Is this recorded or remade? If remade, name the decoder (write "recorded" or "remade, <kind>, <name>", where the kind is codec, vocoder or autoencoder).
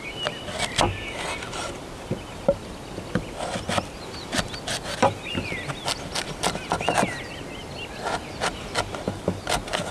recorded